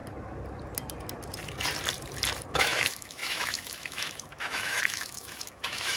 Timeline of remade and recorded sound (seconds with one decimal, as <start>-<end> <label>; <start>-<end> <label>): 0.0-2.5 recorded; 2.5-6.0 remade